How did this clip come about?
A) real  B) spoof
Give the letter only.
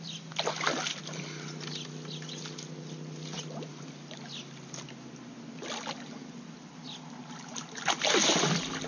A